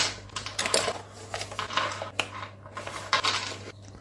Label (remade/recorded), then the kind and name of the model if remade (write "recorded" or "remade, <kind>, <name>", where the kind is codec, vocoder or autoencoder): recorded